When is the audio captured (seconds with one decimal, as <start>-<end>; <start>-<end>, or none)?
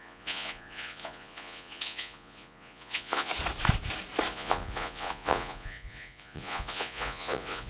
3.3-4.3